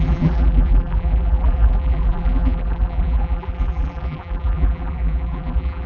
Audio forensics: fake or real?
fake